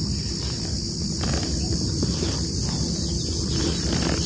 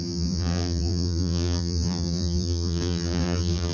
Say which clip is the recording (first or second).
first